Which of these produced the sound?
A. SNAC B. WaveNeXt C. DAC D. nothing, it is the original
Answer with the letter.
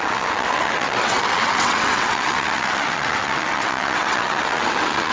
B